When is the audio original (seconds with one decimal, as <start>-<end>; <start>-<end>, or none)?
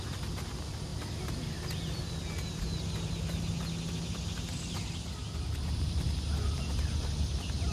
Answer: 0.0-7.7